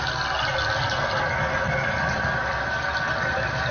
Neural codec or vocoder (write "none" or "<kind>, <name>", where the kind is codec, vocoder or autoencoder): none